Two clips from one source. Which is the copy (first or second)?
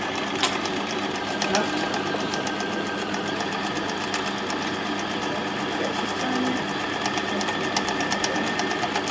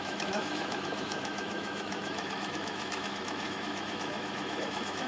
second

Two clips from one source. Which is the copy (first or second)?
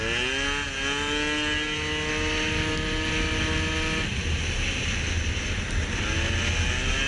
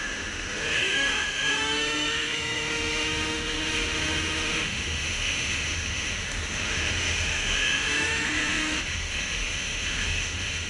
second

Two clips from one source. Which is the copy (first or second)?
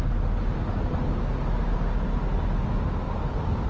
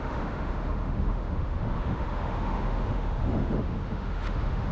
second